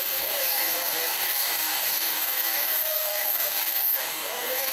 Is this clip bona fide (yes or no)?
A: no